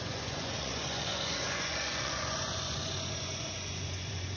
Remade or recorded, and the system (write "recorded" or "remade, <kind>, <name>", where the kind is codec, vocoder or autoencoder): remade, vocoder, Vocos